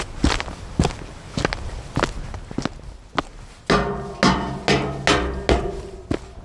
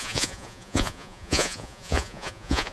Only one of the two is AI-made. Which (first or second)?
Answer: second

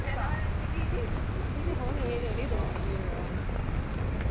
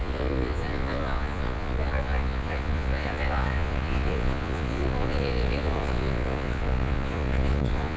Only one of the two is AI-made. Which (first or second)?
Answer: second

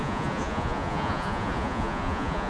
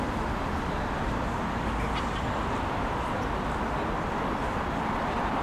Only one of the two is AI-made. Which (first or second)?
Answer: first